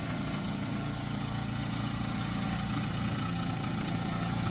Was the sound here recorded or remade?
remade